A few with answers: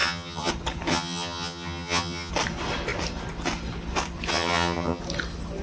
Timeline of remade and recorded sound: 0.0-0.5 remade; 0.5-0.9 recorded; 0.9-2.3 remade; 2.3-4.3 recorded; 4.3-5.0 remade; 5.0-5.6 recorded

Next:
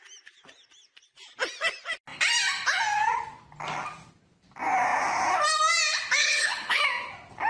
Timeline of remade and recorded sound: 0.0-6.2 recorded; 6.2-6.8 remade; 6.8-7.5 recorded

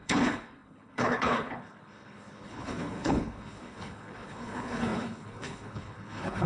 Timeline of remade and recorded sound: 0.0-6.5 remade

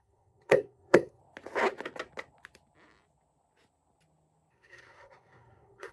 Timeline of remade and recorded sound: 0.0-1.2 remade; 1.2-4.5 recorded; 4.5-5.9 remade

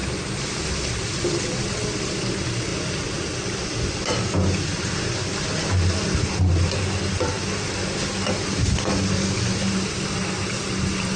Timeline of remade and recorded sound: 0.0-11.2 recorded

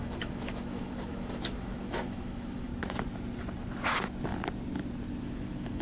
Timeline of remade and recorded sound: 0.0-2.7 remade; 2.7-5.2 recorded; 5.2-5.8 remade